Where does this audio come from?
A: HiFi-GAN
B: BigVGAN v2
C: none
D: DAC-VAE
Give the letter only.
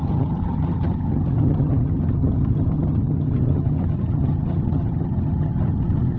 A